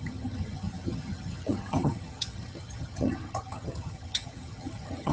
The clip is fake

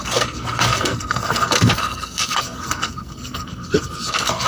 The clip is fake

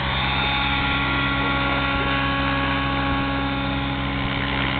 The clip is real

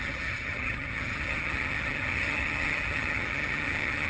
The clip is fake